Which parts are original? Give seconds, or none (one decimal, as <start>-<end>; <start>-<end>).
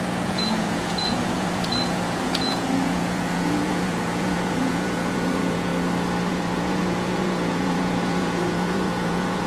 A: 5.7-6.3